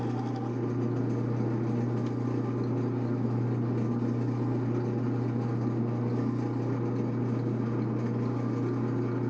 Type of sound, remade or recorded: recorded